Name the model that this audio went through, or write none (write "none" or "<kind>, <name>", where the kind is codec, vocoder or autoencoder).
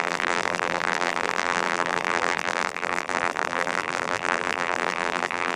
vocoder, BigVGAN v2